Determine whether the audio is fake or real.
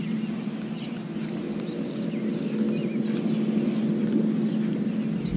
real